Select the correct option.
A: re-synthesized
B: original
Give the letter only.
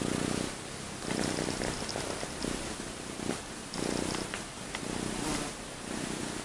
B